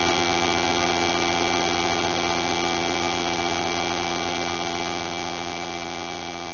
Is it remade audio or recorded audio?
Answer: remade